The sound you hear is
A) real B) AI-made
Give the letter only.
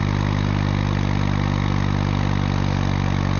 A